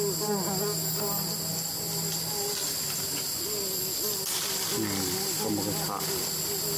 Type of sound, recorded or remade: recorded